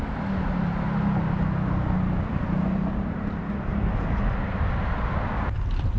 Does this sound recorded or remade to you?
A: recorded